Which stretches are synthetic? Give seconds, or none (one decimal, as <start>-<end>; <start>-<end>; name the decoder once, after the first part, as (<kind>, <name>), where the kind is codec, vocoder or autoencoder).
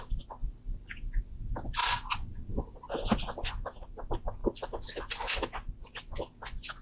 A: none